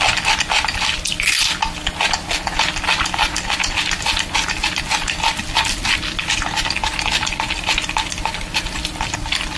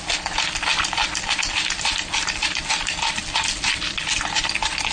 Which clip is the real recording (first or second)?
first